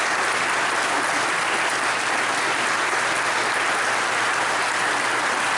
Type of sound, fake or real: real